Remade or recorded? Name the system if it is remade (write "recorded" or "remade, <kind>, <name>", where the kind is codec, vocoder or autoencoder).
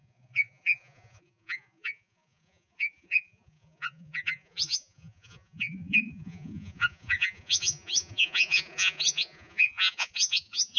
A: remade, vocoder, Vocos